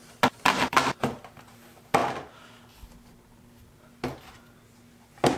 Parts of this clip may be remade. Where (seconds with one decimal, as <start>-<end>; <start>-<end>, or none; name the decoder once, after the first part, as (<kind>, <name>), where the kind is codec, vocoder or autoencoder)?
0.0-1.6 (vocoder, BigVGAN v2)

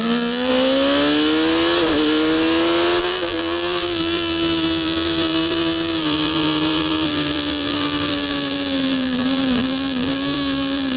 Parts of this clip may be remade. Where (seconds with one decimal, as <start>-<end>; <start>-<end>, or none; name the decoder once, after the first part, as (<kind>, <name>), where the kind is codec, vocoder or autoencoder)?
0.0-0.5 (vocoder, BigVGAN v2); 3.0-11.0

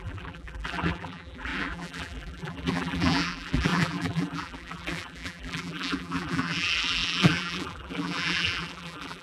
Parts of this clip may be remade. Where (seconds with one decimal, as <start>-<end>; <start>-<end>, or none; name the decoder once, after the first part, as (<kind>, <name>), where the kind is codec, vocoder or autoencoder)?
0.0-9.2 (vocoder, BigVGAN v2)